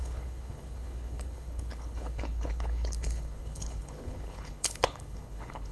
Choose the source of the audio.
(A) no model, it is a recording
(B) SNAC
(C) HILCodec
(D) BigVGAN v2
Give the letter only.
C